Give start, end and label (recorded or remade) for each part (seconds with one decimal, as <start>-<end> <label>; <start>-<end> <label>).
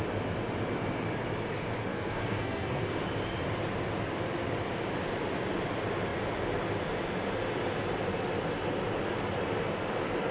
0.0-1.9 recorded; 1.9-2.8 remade; 2.8-10.3 recorded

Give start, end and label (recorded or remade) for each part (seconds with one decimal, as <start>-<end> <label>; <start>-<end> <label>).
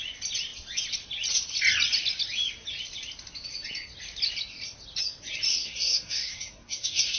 0.0-5.5 recorded; 5.5-7.2 remade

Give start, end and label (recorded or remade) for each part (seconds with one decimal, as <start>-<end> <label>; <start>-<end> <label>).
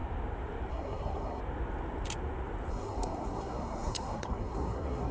0.0-0.7 recorded; 0.7-1.4 remade; 1.4-2.7 recorded; 2.7-5.1 remade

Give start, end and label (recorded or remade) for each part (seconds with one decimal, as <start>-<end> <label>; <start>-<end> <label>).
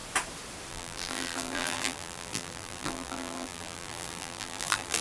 0.0-0.7 recorded; 0.7-5.0 remade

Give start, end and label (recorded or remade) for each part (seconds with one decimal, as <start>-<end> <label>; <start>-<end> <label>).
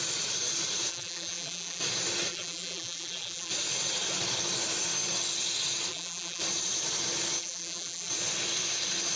0.0-0.9 recorded; 0.9-1.8 remade; 1.8-2.3 recorded; 2.3-3.5 remade; 3.5-5.9 recorded; 5.9-6.4 remade; 6.4-7.4 recorded; 7.4-8.1 remade; 8.1-9.2 recorded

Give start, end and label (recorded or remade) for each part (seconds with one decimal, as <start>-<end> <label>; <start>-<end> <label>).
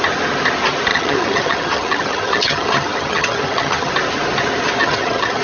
0.0-0.9 recorded; 0.9-3.9 remade; 3.9-4.8 recorded; 4.8-5.4 remade